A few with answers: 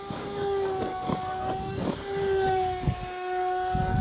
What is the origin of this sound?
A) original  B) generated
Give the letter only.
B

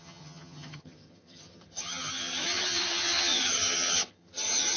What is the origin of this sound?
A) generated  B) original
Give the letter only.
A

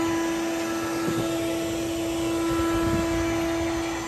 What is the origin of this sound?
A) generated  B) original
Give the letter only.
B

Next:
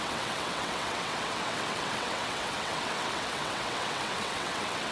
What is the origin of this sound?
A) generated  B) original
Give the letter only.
A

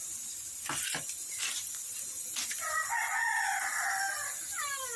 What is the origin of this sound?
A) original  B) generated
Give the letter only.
A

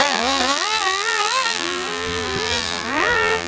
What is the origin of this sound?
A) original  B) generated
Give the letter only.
B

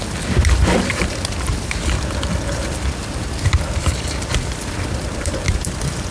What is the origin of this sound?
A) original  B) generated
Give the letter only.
B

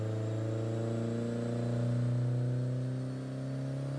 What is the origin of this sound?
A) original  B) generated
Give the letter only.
A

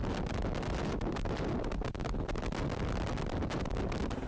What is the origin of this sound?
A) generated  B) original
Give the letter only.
B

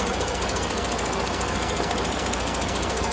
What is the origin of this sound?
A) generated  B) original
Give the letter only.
A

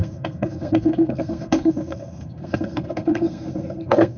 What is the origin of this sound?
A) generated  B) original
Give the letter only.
A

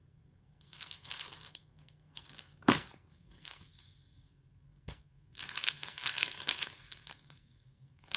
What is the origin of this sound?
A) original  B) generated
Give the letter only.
B